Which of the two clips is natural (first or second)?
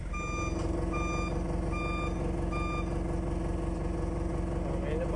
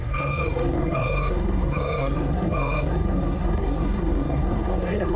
first